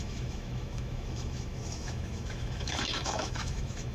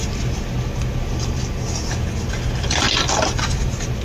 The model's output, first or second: first